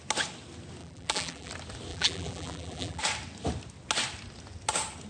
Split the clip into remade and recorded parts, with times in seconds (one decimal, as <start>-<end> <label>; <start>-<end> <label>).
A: 0.0-0.8 recorded; 0.8-1.5 remade; 1.5-1.9 recorded; 1.9-3.0 remade; 3.0-5.1 recorded